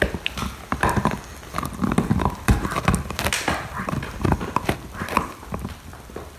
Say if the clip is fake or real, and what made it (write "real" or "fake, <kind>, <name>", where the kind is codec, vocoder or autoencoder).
fake, vocoder, BigVGAN v2